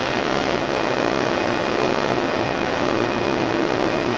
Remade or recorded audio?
remade